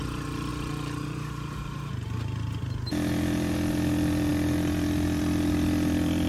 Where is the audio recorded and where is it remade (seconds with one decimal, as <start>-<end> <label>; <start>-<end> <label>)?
0.0-6.3 recorded